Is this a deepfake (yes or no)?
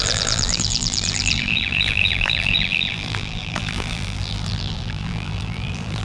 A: yes